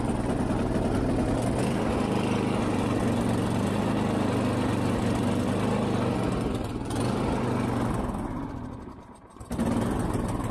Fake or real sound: real